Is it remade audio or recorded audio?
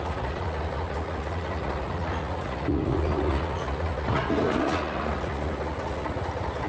remade